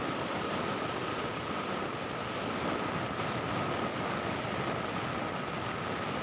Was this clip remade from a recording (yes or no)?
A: no